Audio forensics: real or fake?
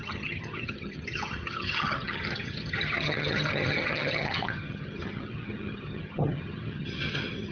fake